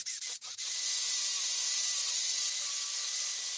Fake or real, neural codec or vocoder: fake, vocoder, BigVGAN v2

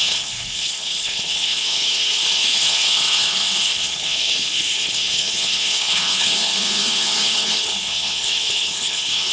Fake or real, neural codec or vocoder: fake, codec, HILCodec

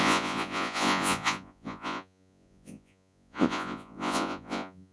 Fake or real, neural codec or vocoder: fake, vocoder, Vocos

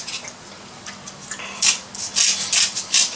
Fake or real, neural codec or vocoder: real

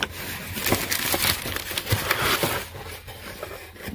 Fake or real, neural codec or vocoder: real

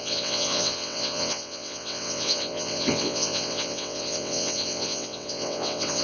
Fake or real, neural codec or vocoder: fake, vocoder, WaveNeXt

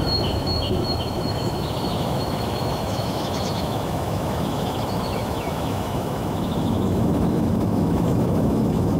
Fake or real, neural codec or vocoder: fake, autoencoder, DAC-VAE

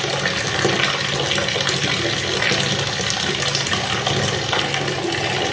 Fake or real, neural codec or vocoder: real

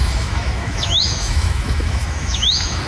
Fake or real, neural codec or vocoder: fake, autoencoder, DAC-VAE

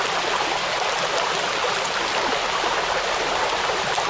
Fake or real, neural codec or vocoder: real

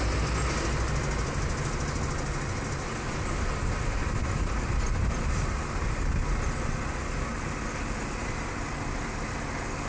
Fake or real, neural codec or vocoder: real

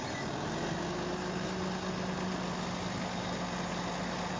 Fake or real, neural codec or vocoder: real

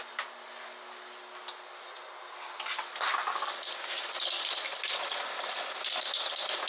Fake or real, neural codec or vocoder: real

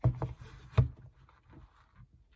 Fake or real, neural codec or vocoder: real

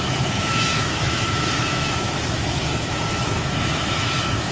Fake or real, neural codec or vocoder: fake, autoencoder, DAC-VAE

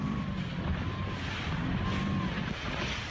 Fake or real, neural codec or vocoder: real